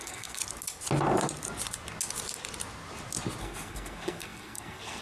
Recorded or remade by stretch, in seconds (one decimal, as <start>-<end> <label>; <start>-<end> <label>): 0.0-0.4 remade; 0.4-3.4 recorded; 3.4-5.0 remade